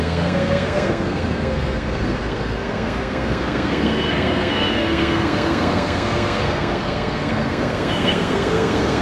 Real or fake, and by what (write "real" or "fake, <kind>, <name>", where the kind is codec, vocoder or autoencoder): fake, codec, SNAC